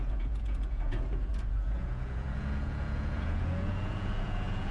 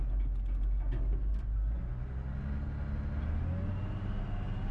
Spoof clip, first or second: first